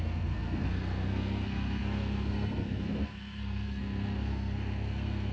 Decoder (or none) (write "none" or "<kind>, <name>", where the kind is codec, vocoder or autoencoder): codec, SNAC